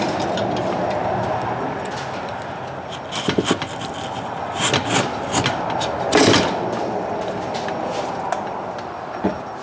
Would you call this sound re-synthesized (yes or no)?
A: no